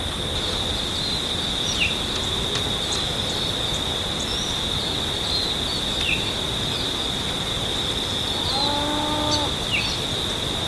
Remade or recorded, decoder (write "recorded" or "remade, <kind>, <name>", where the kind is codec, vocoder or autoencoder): recorded